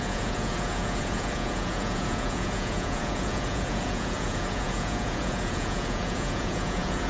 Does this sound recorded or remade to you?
remade